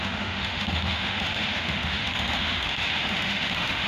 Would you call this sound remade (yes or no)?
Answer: yes